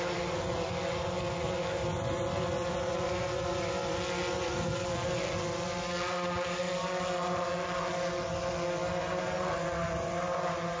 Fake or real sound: real